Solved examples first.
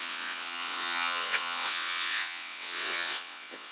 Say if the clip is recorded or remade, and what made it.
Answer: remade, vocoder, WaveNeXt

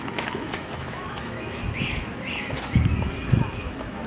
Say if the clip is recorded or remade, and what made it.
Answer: remade, autoencoder, DAC-VAE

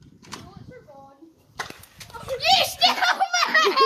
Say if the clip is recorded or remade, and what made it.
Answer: recorded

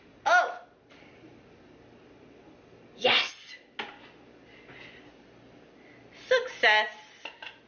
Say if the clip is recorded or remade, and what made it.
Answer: recorded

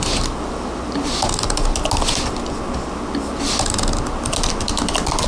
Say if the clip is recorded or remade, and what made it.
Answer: recorded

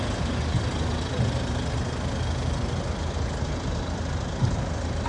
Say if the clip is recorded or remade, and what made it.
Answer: recorded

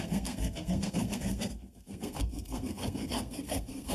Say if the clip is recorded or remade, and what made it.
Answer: remade, codec, SNAC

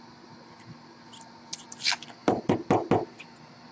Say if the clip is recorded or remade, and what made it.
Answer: recorded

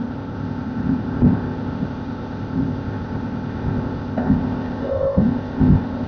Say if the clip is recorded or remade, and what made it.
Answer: remade, codec, ZipCodec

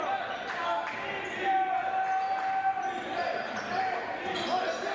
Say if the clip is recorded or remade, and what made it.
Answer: recorded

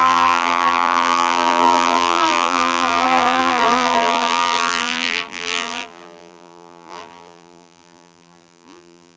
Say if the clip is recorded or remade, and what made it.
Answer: remade, vocoder, BigVGAN v2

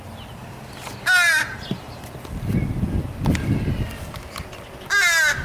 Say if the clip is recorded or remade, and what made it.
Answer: recorded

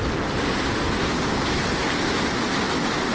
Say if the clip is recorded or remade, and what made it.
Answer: recorded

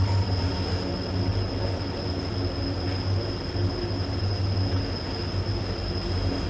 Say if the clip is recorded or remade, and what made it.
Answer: recorded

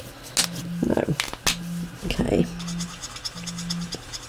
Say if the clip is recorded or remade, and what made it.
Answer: recorded